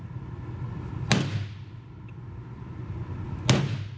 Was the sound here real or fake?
real